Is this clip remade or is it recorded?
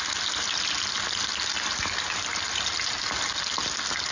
recorded